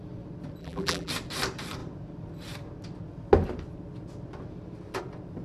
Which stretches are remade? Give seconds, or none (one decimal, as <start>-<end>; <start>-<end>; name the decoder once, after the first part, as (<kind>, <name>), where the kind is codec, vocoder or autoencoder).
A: 0.6-1.1 (vocoder, BigVGAN v2)